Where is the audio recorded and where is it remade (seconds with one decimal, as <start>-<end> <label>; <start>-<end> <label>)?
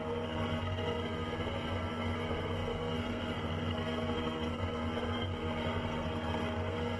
0.0-7.0 remade